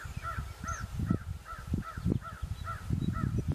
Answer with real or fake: real